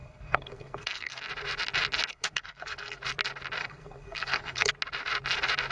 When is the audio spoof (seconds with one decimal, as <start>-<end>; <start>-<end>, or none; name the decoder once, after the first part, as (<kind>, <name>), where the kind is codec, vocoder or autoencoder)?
0.0-1.2 (codec, SNAC); 2.1-3.0; 3.6-4.7